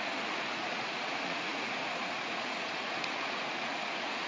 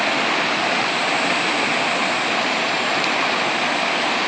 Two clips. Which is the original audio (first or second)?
second